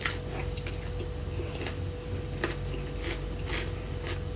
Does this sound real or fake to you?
real